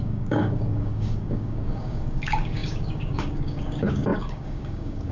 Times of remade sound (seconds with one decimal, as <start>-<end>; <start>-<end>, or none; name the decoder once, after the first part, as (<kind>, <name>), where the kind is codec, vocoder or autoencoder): 0.0-5.1 (codec, DAC)